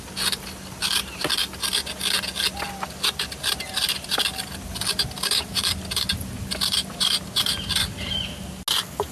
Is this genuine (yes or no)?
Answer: yes